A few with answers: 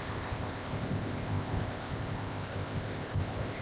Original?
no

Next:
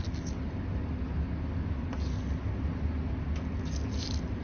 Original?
yes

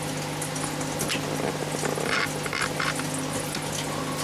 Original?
yes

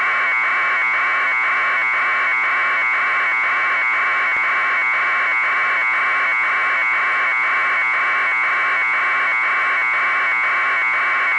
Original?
yes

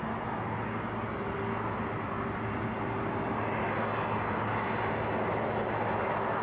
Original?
yes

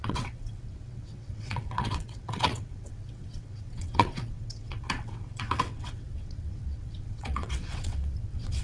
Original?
no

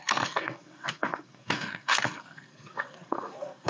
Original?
no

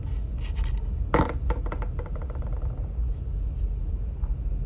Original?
yes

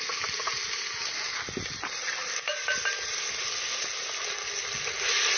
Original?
yes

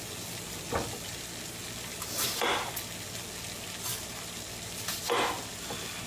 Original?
yes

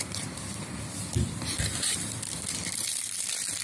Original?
no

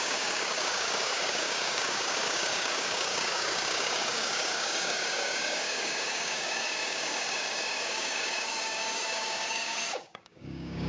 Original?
no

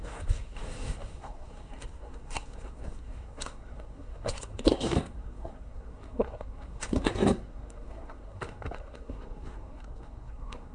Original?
no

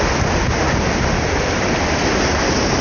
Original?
yes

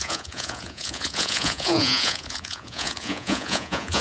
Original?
no